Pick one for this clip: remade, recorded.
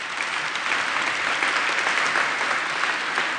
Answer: recorded